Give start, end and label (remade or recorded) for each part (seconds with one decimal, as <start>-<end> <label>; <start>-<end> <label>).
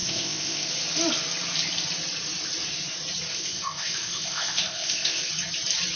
0.0-0.7 remade; 0.7-3.3 recorded; 3.3-5.3 remade; 5.3-6.0 recorded